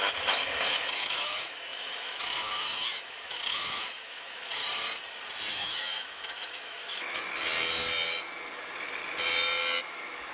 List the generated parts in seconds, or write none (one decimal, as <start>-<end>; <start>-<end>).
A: 0.0-4.6; 5.5-7.3; 8.6-9.0; 9.8-10.3

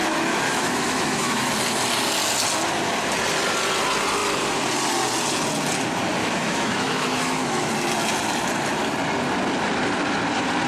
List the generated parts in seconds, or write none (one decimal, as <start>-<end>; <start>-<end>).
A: 0.0-1.5; 6.2-7.7

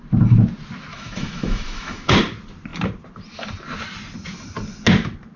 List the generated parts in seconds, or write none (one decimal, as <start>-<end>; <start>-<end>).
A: 0.9-2.1

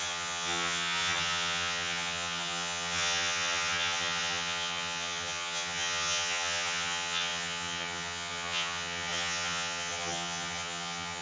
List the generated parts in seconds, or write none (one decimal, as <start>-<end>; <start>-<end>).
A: 0.0-11.2